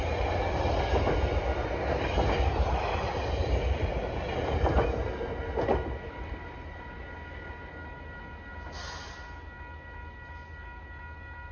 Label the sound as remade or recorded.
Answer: recorded